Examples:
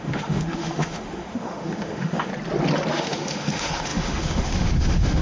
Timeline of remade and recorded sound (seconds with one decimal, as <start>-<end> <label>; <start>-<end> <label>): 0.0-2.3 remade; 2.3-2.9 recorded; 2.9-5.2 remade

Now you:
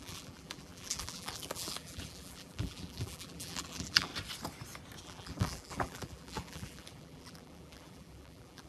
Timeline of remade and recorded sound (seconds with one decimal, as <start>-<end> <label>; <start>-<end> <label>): 0.0-4.1 remade; 4.1-5.0 recorded; 5.0-8.7 remade

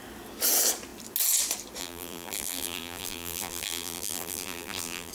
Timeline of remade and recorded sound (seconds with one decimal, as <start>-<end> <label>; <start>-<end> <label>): 0.0-1.8 recorded; 1.8-5.1 remade

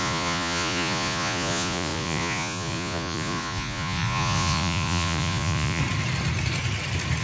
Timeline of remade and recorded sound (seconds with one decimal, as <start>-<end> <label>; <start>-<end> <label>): 0.0-5.8 remade; 5.8-7.2 recorded

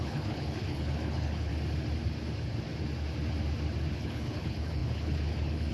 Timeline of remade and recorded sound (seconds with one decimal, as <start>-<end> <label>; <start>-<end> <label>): 0.0-1.5 remade; 1.5-3.9 recorded; 3.9-5.7 remade

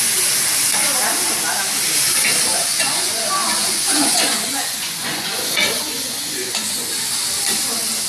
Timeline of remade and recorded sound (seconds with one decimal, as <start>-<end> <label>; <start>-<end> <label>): 0.0-2.5 recorded; 2.5-7.0 remade; 7.0-8.1 recorded

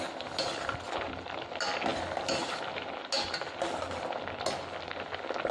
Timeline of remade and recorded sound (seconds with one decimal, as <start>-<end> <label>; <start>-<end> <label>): 0.0-5.5 recorded